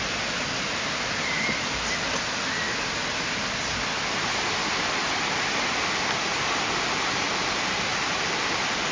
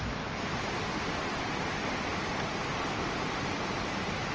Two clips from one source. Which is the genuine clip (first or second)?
first